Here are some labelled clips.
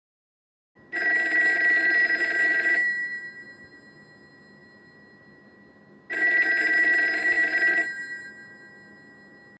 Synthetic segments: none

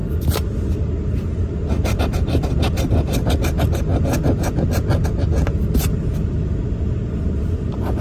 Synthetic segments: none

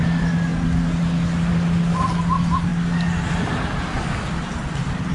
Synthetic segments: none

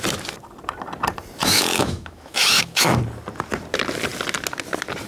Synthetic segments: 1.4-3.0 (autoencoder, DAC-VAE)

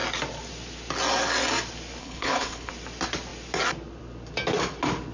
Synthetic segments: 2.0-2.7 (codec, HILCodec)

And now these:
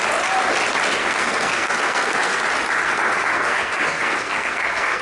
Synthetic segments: 1.0-2.4 (codec, SNAC); 2.8-5.0

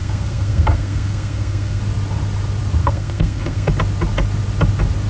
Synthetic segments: 0.0-1.8 (codec, SNAC); 2.8-3.7

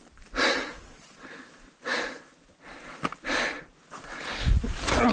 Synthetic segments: 1.9-3.6 (vocoder, BigVGAN v2)